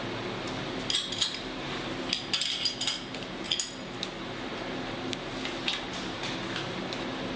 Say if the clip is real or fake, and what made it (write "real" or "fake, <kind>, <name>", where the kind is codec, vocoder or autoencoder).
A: real